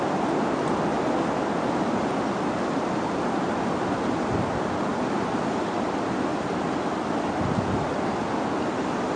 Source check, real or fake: real